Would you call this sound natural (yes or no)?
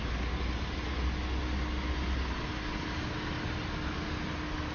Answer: yes